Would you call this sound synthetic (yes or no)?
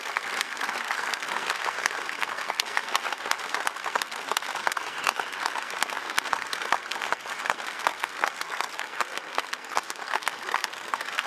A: yes